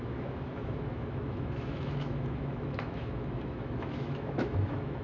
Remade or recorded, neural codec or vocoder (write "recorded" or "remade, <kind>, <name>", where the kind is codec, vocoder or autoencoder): remade, autoencoder, DAC-VAE